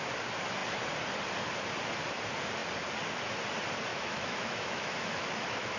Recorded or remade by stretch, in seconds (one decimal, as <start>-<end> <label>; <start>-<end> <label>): 0.0-3.9 recorded; 3.9-5.8 remade